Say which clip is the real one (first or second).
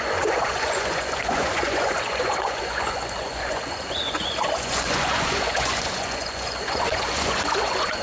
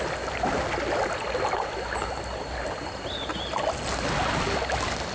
second